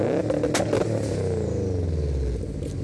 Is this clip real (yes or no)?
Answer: yes